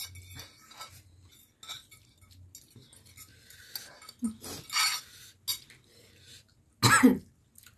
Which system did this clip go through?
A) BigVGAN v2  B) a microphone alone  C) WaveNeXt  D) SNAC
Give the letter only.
B